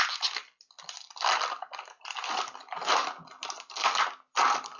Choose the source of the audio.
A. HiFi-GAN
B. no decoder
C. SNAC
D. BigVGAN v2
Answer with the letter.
B